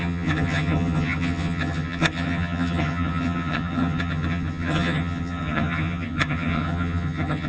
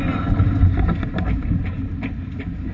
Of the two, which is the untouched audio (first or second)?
second